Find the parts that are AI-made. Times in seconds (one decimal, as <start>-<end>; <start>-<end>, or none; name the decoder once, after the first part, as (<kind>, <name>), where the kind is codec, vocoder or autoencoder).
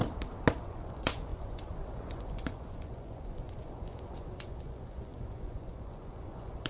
0.5-6.7 (vocoder, Vocos)